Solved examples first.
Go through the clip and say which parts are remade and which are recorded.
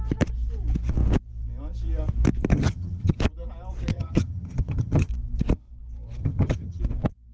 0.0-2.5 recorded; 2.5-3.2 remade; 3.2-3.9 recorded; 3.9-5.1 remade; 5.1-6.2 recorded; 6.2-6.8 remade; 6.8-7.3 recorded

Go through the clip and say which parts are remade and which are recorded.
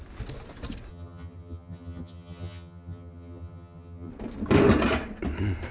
0.0-0.9 recorded; 0.9-4.1 remade; 4.1-5.7 recorded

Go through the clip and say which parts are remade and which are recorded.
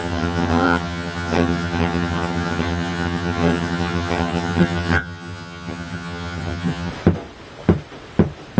0.0-6.9 remade; 6.9-8.6 recorded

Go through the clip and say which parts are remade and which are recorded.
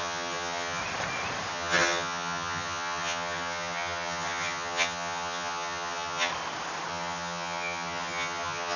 0.0-0.8 remade; 0.8-1.5 recorded; 1.5-6.3 remade; 6.3-6.9 recorded; 6.9-8.8 remade